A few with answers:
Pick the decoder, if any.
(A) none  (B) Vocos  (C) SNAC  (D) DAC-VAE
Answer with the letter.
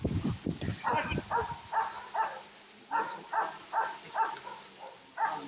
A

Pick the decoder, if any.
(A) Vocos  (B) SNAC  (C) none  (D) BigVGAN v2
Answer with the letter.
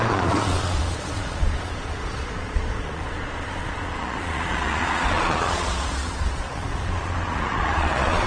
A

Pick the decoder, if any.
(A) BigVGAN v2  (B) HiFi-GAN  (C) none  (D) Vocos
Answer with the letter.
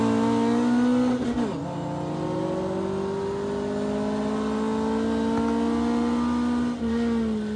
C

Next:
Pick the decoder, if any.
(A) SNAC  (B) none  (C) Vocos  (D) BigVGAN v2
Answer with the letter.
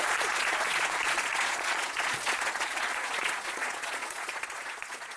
C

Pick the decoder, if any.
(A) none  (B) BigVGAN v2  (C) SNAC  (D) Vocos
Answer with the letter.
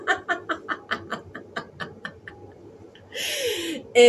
A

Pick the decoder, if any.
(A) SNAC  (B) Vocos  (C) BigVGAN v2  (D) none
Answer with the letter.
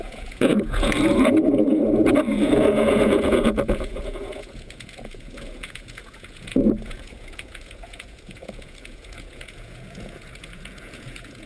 B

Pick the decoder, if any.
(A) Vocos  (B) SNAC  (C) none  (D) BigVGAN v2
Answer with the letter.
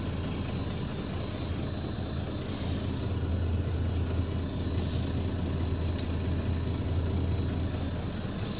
C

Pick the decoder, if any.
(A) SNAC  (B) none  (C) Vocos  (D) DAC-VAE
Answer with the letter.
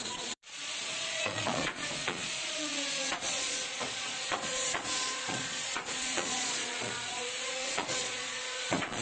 C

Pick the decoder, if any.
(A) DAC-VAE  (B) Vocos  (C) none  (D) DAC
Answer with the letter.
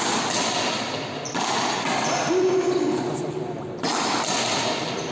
C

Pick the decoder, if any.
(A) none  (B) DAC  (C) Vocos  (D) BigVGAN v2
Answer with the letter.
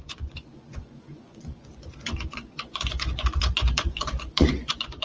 C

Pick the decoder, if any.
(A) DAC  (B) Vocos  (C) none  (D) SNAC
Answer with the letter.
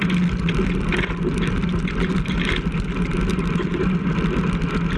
C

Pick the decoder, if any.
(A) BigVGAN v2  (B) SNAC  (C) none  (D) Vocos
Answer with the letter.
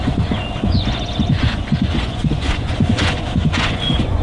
D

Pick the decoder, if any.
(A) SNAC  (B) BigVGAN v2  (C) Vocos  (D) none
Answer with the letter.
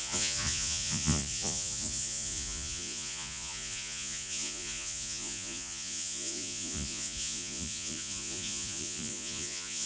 C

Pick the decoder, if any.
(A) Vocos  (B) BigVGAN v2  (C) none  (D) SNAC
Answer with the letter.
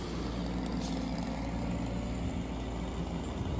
C